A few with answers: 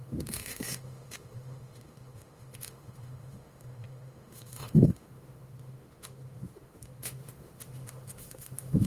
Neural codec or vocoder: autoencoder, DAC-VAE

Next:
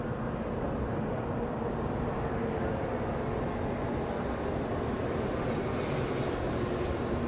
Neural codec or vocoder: none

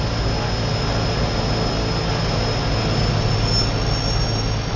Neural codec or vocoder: none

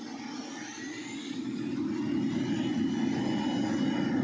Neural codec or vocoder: none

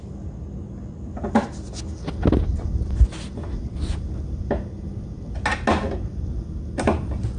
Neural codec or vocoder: none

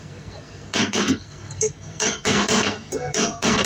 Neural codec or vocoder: codec, SNAC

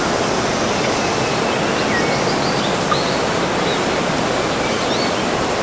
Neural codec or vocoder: none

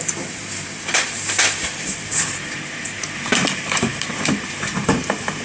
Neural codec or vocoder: vocoder, BigVGAN v2